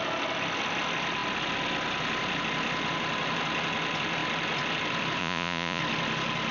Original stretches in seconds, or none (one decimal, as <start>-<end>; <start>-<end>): 0.0-5.2; 5.8-6.5